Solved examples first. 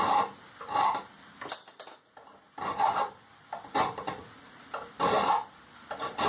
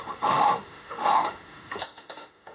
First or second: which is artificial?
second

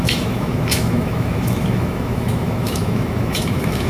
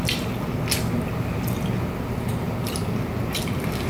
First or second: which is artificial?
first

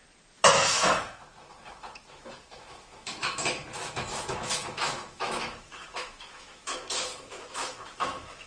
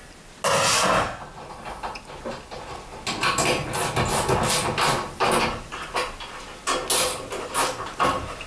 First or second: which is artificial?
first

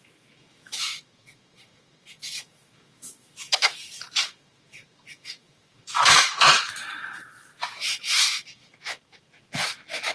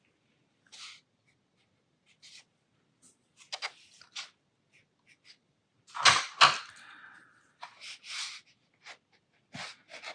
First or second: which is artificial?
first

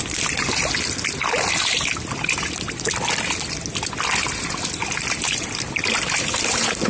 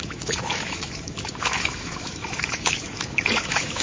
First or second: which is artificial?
second